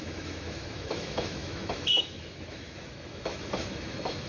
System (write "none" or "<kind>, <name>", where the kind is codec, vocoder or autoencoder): autoencoder, DAC-VAE